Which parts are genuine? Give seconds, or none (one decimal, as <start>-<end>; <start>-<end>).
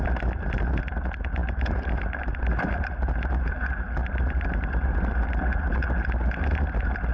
0.0-1.4; 2.9-7.1